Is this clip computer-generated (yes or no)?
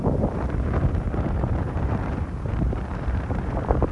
yes